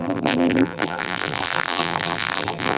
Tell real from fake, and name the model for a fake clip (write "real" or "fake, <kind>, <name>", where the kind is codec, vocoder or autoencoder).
fake, vocoder, BigVGAN v2